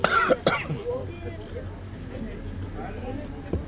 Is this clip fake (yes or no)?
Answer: no